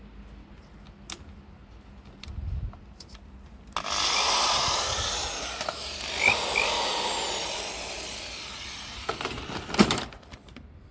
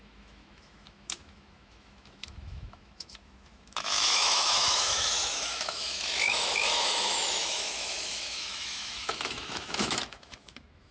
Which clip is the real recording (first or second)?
first